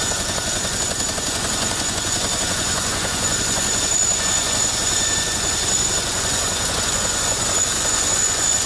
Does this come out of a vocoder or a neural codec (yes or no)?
yes